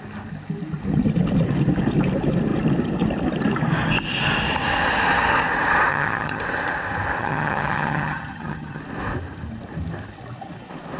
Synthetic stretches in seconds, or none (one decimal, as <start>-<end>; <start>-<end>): 5.9-6.4; 7.2-8.8